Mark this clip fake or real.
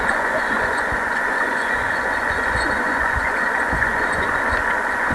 fake